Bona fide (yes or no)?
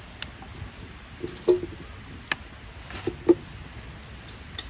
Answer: yes